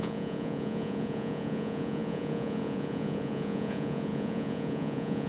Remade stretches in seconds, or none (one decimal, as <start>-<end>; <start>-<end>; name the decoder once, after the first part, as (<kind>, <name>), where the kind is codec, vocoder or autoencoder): 0.0-5.3 (vocoder, Vocos)